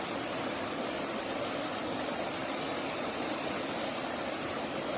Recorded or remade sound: recorded